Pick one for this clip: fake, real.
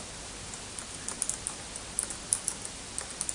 real